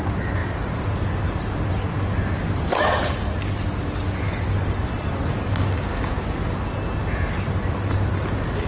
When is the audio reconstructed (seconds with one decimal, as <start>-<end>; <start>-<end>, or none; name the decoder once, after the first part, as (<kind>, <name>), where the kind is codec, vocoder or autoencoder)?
5.3-6.2 (codec, DAC)